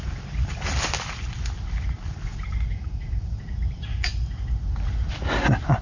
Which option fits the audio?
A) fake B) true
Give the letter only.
B